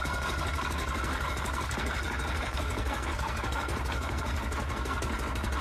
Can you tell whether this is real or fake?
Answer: fake